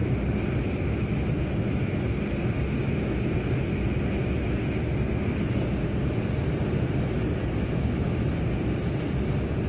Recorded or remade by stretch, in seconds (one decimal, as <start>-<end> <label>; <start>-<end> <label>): 0.0-9.7 recorded